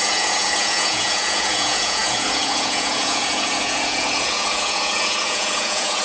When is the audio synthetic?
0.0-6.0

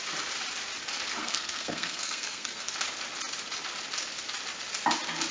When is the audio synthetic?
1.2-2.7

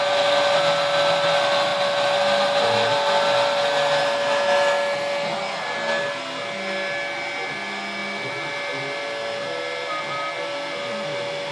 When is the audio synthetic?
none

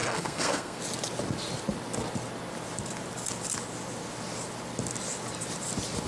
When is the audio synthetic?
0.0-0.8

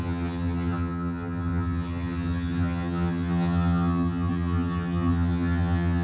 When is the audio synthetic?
0.0-6.0

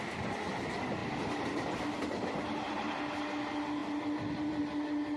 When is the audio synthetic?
1.0-3.0; 3.8-4.6